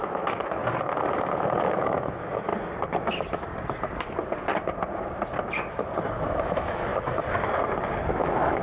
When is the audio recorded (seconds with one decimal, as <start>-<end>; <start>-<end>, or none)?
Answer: 0.6-1.6; 2.5-6.4; 6.9-8.1